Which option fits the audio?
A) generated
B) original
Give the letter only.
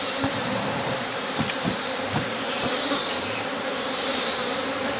A